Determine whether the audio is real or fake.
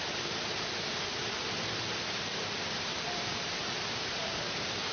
fake